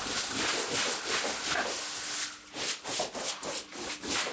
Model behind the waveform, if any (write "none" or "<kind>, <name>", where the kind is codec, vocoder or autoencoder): none